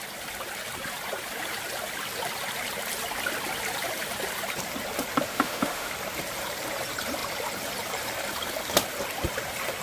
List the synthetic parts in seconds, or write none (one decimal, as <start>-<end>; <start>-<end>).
5.3-5.9

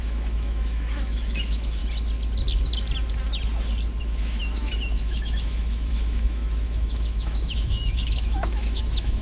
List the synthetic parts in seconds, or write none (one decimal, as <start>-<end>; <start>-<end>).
0.0-1.8; 4.0-9.2

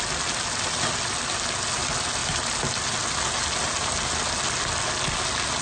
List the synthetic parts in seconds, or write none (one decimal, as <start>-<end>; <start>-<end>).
none